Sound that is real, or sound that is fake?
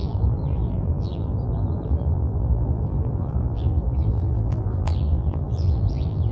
fake